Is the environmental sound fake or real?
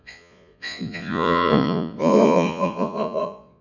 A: fake